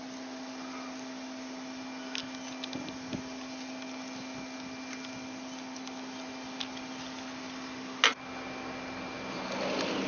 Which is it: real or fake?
real